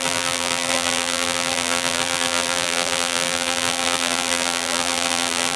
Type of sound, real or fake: fake